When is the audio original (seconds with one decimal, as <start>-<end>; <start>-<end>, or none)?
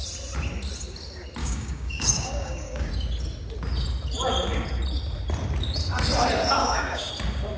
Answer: 0.0-1.4; 2.9-6.6; 7.1-7.6